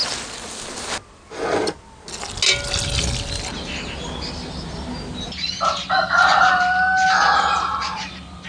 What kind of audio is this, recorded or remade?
recorded